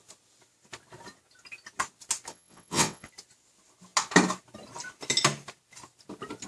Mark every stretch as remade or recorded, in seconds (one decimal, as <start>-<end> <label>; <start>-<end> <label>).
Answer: 0.0-2.3 recorded; 2.3-3.1 remade; 3.1-6.5 recorded